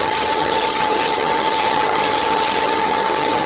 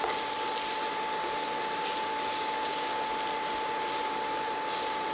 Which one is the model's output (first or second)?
first